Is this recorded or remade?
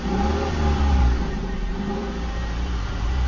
remade